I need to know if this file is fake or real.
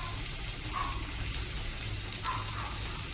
real